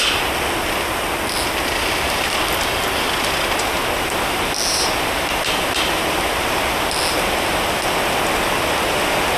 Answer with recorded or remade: recorded